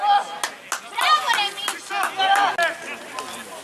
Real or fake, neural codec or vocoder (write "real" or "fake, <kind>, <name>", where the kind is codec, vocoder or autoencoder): real